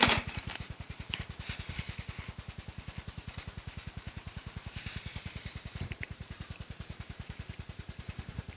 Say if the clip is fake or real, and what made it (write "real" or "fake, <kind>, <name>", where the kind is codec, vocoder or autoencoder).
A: fake, vocoder, BigVGAN v2